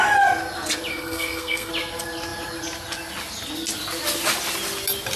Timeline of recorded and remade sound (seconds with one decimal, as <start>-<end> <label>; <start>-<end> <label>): 0.0-0.9 recorded; 0.9-1.7 remade; 1.7-5.2 recorded